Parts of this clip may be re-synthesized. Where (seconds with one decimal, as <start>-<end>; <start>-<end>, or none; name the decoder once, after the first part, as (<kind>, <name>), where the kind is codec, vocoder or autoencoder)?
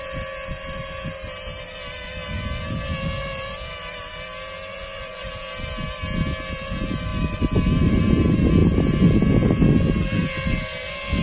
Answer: 4.7-5.3 (vocoder, Vocos)